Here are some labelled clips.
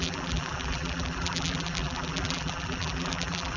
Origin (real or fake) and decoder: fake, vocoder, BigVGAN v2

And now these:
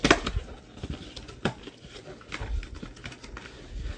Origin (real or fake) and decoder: real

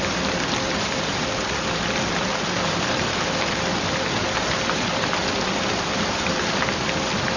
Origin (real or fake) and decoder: fake, vocoder, BigVGAN v2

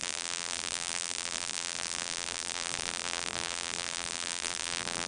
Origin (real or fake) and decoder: fake, vocoder, BigVGAN v2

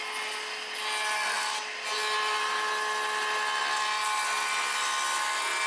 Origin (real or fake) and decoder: real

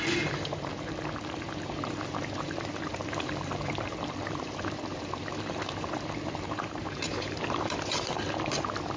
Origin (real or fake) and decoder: fake, vocoder, BigVGAN v2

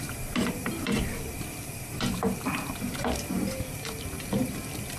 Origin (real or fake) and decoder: fake, vocoder, BigVGAN v2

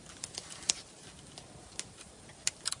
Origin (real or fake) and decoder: real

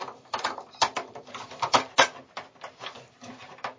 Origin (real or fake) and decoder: fake, vocoder, BigVGAN v2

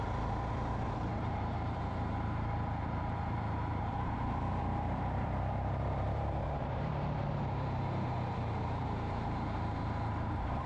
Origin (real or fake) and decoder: fake, vocoder, BigVGAN v2